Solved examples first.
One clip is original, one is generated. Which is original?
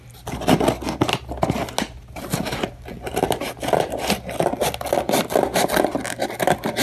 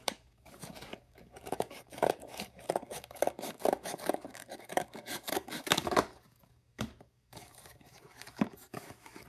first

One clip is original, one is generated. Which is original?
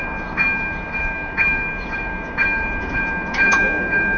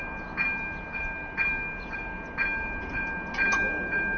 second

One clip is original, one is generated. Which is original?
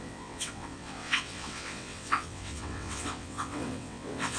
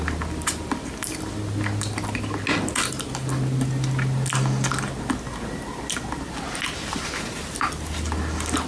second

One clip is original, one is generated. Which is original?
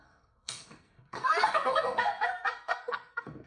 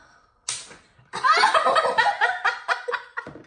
second